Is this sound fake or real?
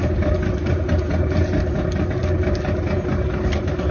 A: real